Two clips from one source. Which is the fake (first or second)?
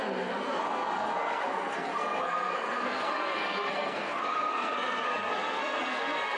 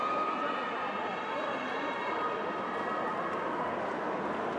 first